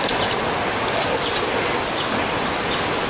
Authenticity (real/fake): real